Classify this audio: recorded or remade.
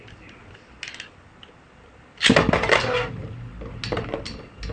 recorded